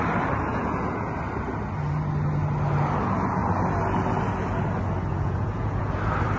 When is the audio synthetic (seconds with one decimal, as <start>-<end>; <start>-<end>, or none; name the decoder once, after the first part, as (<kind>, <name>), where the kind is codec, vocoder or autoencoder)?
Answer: 0.5-1.1 (vocoder, Vocos); 5.1-6.0